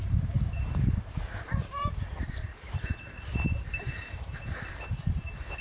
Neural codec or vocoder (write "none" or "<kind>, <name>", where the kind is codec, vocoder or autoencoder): vocoder, BigVGAN v2